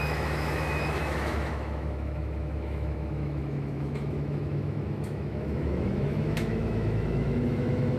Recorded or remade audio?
remade